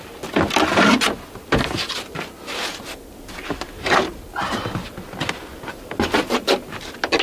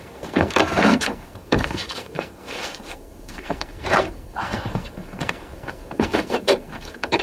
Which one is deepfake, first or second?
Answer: second